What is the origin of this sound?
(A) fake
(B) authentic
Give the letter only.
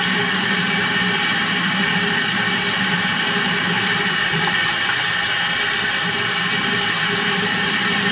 B